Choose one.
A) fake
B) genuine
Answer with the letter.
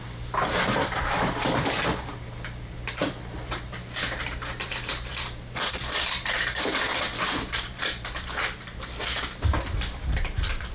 A